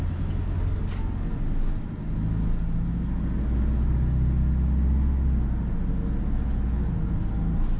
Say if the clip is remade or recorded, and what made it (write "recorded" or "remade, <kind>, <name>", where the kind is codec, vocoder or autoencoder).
recorded